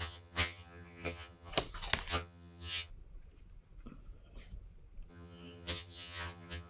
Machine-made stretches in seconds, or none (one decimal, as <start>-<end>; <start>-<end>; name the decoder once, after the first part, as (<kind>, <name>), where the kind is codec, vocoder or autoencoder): 0.0-1.5 (vocoder, HiFi-GAN); 2.1-2.9; 5.1-6.7